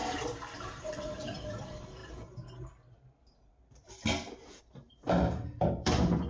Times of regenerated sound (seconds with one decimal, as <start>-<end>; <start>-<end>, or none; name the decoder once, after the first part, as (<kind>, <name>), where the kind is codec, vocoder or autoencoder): 0.0-2.0 (vocoder, BigVGAN v2); 4.6-6.3